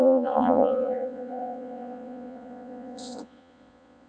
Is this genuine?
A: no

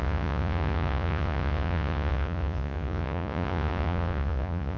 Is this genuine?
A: no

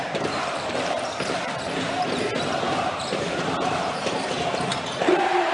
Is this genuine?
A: no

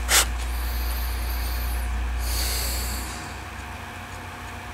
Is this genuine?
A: yes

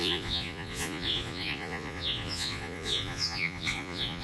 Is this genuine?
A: no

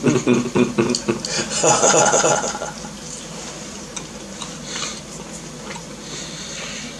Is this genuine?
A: yes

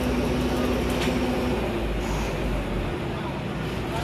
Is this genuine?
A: yes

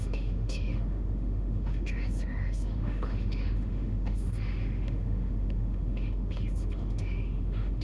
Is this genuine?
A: no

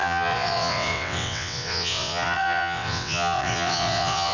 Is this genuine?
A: no